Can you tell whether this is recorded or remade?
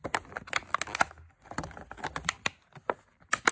recorded